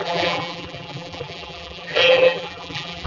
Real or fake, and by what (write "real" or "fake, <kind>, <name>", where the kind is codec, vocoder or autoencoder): fake, vocoder, BigVGAN v2